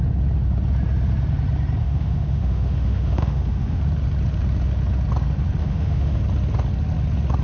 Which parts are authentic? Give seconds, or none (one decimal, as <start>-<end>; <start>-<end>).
0.0-1.8; 3.8-5.6; 6.2-7.4